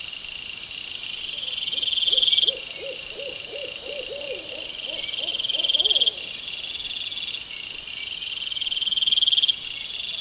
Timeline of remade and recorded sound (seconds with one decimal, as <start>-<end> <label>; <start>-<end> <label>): 0.0-10.2 recorded

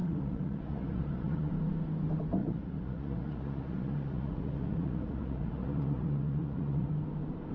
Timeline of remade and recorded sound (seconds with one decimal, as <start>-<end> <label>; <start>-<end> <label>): 0.0-1.5 remade; 1.5-2.4 recorded; 2.4-6.9 remade; 6.9-7.5 recorded

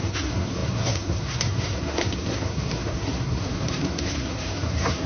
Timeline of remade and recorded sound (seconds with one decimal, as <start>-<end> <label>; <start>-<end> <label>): 0.0-5.1 remade

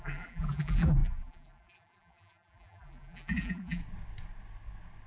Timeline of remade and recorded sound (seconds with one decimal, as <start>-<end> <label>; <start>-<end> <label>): 0.0-3.8 remade; 3.8-5.1 recorded

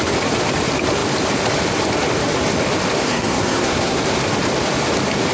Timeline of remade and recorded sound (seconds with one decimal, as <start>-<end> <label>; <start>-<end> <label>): 0.0-3.0 recorded; 3.0-4.0 remade; 4.0-5.3 recorded